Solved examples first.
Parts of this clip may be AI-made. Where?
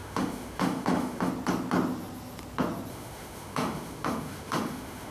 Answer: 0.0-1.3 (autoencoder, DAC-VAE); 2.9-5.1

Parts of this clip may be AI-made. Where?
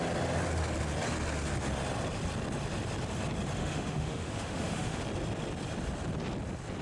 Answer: 3.6-5.0 (autoencoder, DAC-VAE)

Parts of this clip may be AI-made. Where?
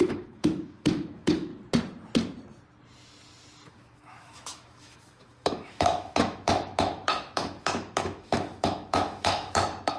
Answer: 0.0-1.5 (autoencoder, DAC-VAE); 3.7-10.0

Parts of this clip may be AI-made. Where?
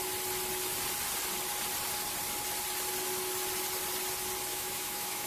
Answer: 4.5-5.3 (autoencoder, DAC-VAE)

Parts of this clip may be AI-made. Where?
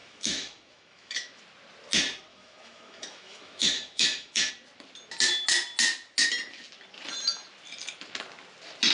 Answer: 0.0-1.4 (autoencoder, DAC-VAE); 2.3-4.5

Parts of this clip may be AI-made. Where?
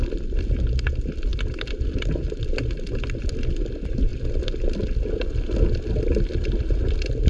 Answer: none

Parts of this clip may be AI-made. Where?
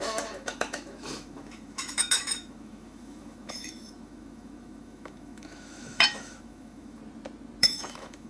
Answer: 0.0-7.0 (autoencoder, DAC-VAE); 7.6-8.3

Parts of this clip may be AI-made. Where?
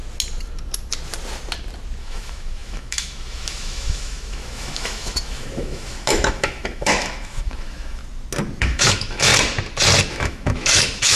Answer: 2.0-8.0 (autoencoder, DAC-VAE); 8.6-9.3; 10.1-11.2